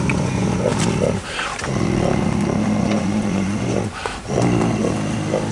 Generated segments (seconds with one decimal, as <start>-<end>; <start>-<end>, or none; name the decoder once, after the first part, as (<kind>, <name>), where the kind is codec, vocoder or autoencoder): 0.0-0.7 (vocoder, Vocos); 2.8-4.0